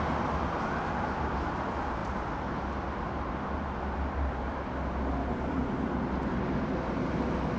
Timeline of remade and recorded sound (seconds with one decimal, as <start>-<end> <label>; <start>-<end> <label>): 0.0-7.6 recorded